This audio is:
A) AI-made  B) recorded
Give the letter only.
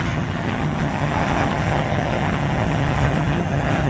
A